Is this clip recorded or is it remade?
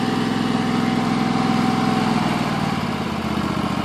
recorded